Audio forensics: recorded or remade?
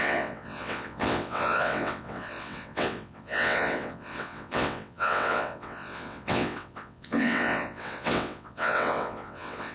remade